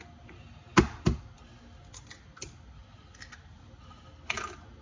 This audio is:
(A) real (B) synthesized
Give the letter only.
A